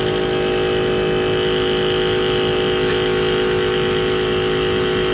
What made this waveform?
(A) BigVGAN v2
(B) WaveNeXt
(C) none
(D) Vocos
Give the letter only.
C